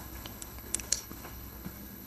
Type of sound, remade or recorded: remade